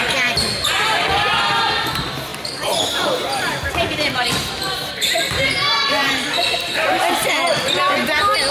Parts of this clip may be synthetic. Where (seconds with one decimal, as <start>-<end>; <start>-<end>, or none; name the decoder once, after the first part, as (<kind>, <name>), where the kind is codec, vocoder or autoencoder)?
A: 2.3-3.7 (vocoder, BigVGAN v2); 6.0-7.6